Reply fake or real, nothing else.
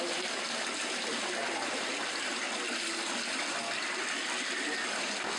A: real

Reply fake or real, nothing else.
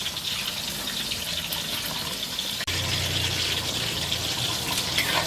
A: real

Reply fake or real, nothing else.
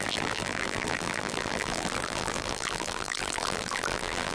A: fake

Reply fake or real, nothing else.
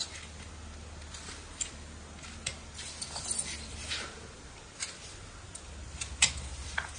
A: real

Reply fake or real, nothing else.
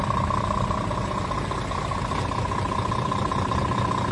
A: fake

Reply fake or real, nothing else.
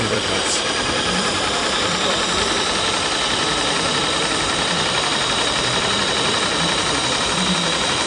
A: fake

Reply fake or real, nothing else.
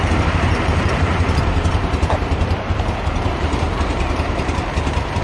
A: fake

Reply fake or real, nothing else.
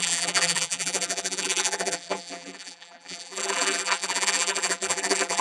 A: fake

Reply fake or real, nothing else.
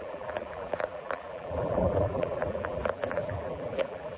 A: fake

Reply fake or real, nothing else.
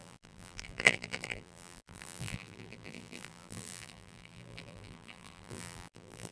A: fake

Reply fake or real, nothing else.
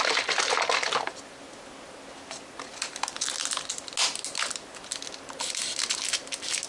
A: real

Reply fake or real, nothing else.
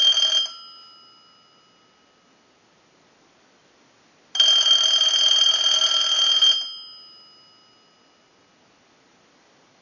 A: real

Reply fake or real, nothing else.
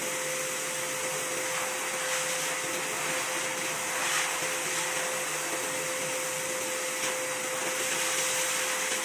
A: real